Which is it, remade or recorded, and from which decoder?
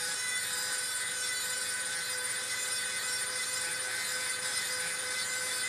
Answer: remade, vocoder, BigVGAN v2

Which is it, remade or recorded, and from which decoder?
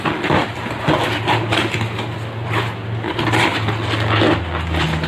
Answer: recorded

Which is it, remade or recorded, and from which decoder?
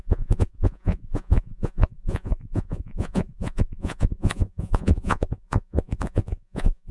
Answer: remade, vocoder, Vocos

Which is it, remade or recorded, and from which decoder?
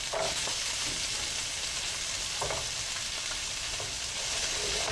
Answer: recorded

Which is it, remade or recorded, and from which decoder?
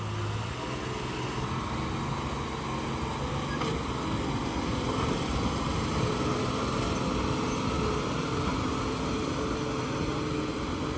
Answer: recorded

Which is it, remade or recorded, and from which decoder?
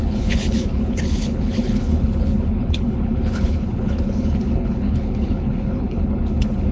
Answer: remade, codec, HILCodec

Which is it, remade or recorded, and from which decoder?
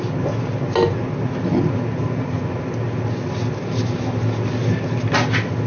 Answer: recorded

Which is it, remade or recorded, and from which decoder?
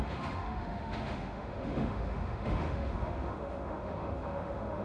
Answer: remade, autoencoder, DAC-VAE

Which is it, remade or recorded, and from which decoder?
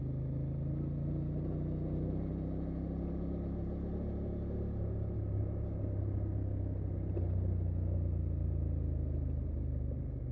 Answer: recorded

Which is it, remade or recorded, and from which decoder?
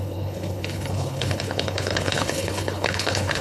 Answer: remade, codec, HILCodec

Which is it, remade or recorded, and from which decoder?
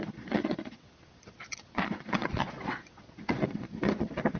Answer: remade, vocoder, Vocos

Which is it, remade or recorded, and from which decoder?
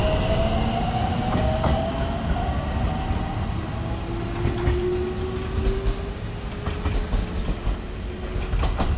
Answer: recorded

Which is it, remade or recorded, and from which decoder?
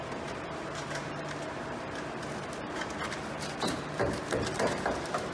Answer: remade, vocoder, BigVGAN v2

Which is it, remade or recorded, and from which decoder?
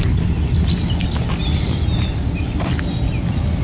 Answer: recorded